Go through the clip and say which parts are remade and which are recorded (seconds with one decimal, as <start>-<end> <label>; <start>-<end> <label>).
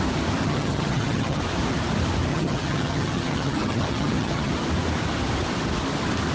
0.0-0.4 recorded; 0.4-1.4 remade; 1.4-2.3 recorded; 2.3-4.5 remade; 4.5-6.3 recorded